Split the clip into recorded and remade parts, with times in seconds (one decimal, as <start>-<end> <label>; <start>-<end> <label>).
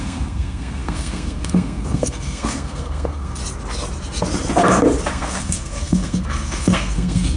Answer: 0.0-3.4 remade; 3.4-5.1 recorded; 5.1-7.4 remade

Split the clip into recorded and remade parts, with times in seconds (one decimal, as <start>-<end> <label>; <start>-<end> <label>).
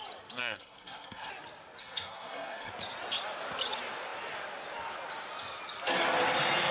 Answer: 0.0-0.4 recorded; 0.4-1.3 remade; 1.3-1.8 recorded; 1.8-2.7 remade; 2.7-6.7 recorded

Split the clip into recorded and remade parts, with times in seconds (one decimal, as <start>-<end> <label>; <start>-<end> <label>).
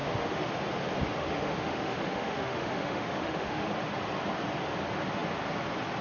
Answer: 0.0-0.6 remade; 0.6-1.2 recorded; 1.2-3.7 remade; 3.7-6.0 recorded